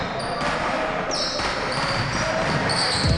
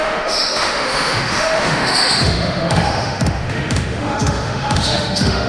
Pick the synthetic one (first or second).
second